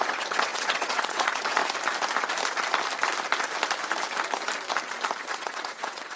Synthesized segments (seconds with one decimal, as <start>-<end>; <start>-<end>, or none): 0.0-1.6; 5.3-6.2